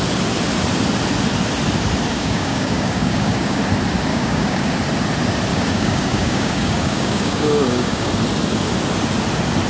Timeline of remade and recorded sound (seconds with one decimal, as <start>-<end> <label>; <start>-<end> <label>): 0.0-2.1 recorded; 2.1-3.6 remade; 3.6-4.1 recorded; 4.1-4.7 remade; 4.7-5.5 recorded; 5.5-8.1 remade; 8.1-9.7 recorded